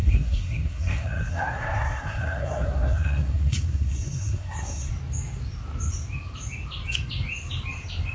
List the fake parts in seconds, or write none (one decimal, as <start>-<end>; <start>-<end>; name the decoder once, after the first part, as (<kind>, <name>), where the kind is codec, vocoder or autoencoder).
0.0-4.9 (codec, SNAC)